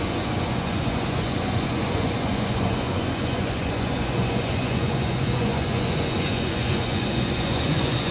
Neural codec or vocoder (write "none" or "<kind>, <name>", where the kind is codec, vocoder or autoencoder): vocoder, Vocos